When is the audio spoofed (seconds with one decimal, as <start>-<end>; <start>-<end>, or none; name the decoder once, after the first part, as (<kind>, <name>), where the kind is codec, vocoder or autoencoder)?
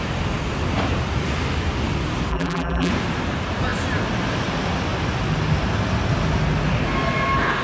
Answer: 2.3-2.9 (vocoder, BigVGAN v2)